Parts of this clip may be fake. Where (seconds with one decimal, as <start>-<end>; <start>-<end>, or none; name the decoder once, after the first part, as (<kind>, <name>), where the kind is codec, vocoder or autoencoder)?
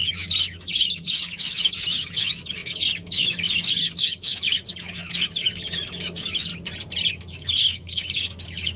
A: 0.0-6.5 (autoencoder, DAC-VAE); 7.1-8.8